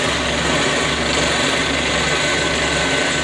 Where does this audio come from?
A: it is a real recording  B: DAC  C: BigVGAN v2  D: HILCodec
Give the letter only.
A